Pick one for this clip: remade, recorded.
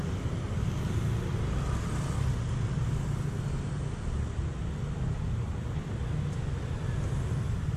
recorded